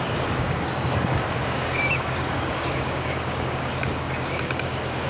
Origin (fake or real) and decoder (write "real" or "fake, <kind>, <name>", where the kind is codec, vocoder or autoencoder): fake, codec, DAC